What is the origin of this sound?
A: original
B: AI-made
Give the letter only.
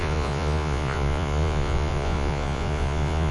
B